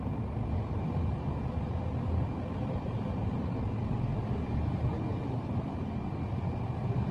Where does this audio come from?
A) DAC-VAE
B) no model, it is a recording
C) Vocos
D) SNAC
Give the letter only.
B